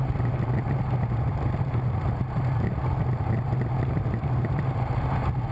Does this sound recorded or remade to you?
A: recorded